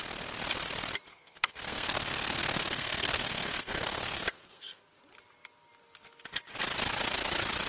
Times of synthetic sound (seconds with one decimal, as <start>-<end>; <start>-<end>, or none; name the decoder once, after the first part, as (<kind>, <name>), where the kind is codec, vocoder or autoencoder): 1.1-4.8 (codec, SNAC)